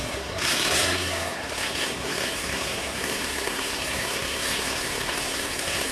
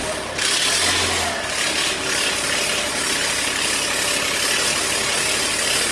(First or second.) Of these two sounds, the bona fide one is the second